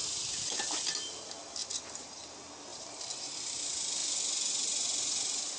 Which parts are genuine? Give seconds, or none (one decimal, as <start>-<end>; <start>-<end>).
0.9-2.7; 3.2-5.6

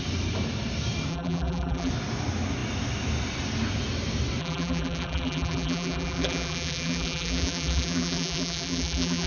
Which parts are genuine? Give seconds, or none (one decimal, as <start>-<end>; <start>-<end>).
0.0-1.1; 1.9-4.4

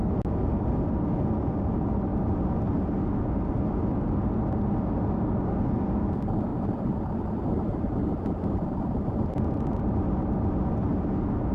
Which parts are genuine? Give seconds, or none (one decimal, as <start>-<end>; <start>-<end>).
0.0-6.5; 9.9-11.5

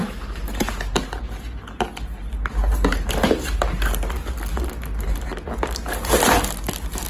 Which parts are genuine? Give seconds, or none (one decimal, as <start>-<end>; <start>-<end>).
1.0-7.1

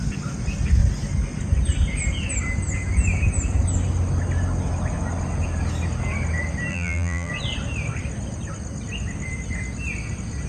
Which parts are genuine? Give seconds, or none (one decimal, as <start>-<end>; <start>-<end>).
0.0-6.7; 7.3-10.5

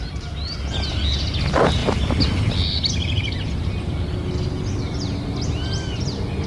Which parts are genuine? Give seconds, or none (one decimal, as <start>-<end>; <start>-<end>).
0.0-6.5

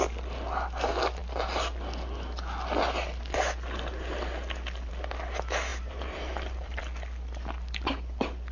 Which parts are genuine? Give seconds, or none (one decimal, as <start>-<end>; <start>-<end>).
0.0-5.7; 6.8-8.5